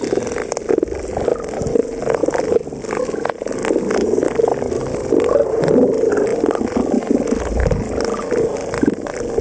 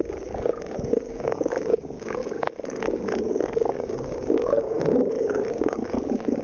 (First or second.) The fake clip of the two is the second